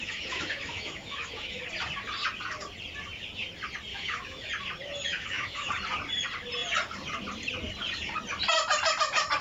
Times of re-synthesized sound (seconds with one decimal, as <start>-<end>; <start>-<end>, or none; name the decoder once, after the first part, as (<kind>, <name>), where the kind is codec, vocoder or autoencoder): 0.0-1.6 (autoencoder, DAC-VAE); 3.9-4.5; 5.1-5.7